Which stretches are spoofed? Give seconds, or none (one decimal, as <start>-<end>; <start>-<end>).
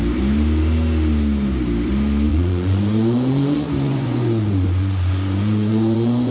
2.3-6.3